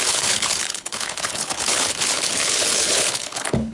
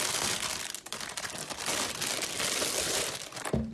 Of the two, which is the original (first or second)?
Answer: second